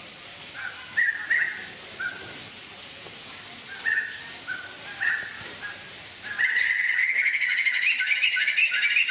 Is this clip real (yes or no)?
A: yes